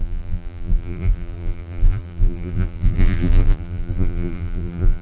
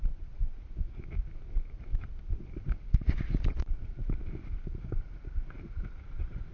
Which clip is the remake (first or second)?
first